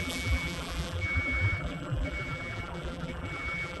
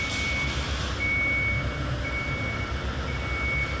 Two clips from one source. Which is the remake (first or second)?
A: first